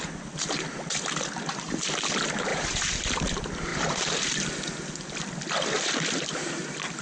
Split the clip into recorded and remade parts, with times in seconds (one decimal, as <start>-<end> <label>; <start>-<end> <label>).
0.0-2.5 recorded; 2.5-3.1 remade; 3.1-7.0 recorded